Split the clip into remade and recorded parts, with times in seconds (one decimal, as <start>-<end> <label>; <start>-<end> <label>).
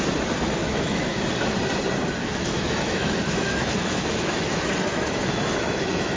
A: 0.0-0.6 recorded; 0.6-1.2 remade; 1.2-2.2 recorded; 2.2-6.2 remade